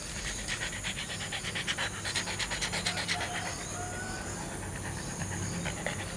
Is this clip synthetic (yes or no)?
no